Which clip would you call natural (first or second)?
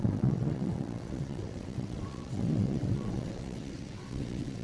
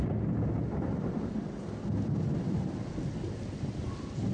second